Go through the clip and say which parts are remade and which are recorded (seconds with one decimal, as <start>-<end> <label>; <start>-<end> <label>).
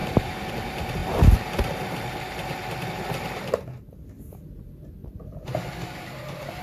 0.0-0.5 remade; 0.5-5.0 recorded; 5.0-5.6 remade; 5.6-6.6 recorded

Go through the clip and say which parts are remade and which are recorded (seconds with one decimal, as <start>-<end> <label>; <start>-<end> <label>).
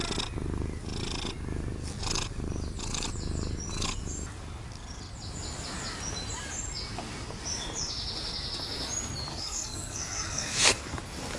0.0-9.3 recorded; 9.3-11.0 remade; 11.0-11.4 recorded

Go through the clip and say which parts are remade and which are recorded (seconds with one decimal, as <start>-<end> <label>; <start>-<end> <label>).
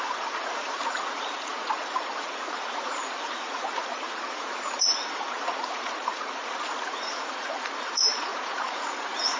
0.0-9.4 remade